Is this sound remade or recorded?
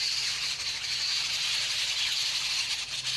recorded